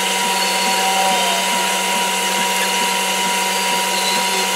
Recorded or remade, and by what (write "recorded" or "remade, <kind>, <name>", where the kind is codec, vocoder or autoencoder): recorded